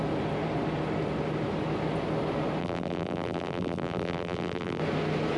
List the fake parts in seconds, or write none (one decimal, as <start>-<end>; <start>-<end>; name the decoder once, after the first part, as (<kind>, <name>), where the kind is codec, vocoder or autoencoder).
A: 2.6-4.8 (vocoder, BigVGAN v2)